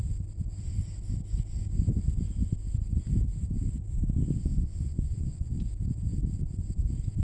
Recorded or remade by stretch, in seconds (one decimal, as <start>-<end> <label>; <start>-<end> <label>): 0.0-4.5 recorded; 4.5-5.6 remade; 5.6-7.2 recorded